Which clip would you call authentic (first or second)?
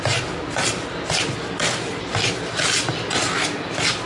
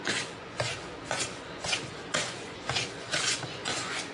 first